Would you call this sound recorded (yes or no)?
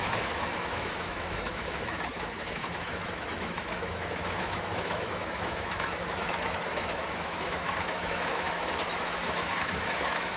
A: no